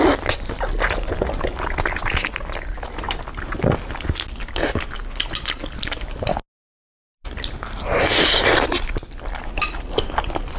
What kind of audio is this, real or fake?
real